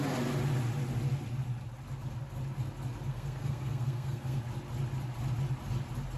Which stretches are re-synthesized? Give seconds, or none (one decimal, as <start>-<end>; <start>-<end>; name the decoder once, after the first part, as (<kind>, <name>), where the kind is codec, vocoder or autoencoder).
3.1-4.4 (codec, SNAC)